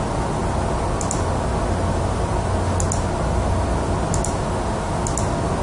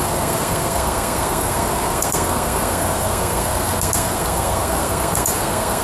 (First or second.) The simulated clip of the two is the second